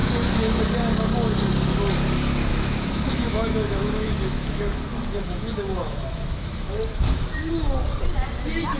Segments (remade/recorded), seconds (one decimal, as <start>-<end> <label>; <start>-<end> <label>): 0.0-0.6 remade; 0.6-2.5 recorded; 2.5-7.5 remade; 7.5-8.8 recorded